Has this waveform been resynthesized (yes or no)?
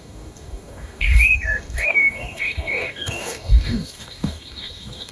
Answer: yes